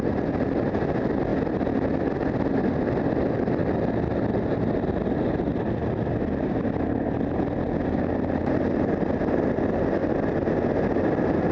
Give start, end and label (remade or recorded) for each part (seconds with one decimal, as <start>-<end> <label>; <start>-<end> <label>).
0.0-11.5 recorded